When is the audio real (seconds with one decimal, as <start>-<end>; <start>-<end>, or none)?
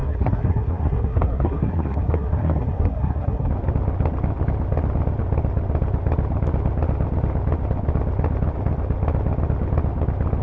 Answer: 3.5-10.4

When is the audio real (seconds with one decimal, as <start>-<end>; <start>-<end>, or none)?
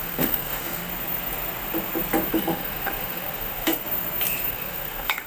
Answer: 0.8-2.3; 3.8-4.5